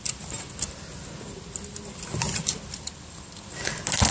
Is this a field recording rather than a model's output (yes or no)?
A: yes